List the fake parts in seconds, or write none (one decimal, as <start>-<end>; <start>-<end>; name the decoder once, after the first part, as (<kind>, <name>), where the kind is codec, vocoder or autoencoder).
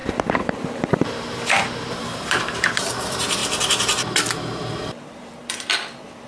0.0-3.4 (vocoder, BigVGAN v2); 4.7-6.3